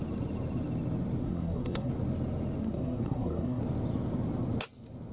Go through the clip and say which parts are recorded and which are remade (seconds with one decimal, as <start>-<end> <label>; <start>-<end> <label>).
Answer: 0.0-1.2 recorded; 1.2-1.9 remade; 1.9-2.6 recorded; 2.6-3.6 remade; 3.6-5.1 recorded